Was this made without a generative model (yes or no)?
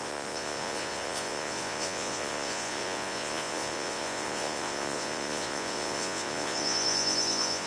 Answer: no